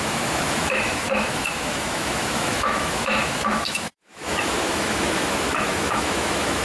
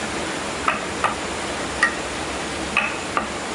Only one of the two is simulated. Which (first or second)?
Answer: first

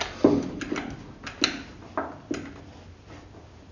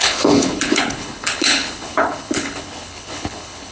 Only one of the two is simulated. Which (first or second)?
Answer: second